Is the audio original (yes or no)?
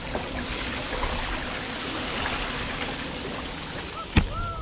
yes